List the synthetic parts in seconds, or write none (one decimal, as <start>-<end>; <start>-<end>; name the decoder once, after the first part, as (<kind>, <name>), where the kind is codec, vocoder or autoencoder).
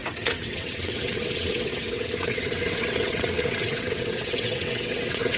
0.0-5.4 (vocoder, WaveNeXt)